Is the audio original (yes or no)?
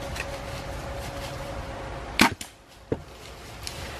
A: yes